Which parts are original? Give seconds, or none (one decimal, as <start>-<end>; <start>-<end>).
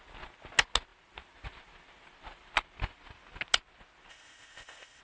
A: 0.0-4.1